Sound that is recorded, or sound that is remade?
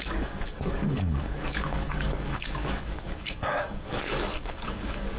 remade